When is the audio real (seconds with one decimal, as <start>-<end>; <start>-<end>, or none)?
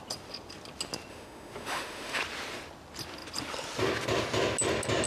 0.0-1.1; 2.2-5.1